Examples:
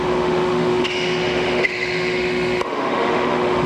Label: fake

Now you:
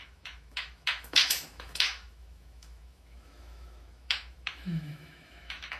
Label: fake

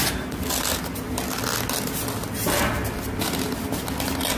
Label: real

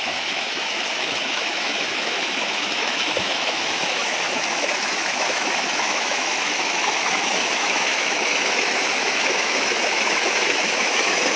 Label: fake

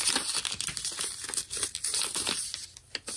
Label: real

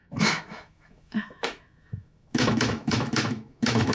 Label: fake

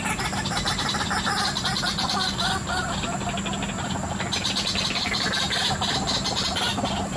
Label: real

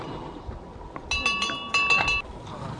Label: real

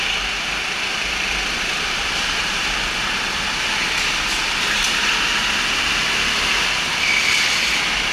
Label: real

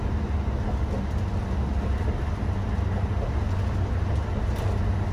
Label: real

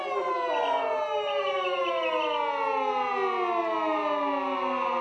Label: real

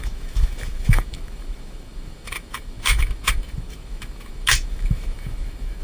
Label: fake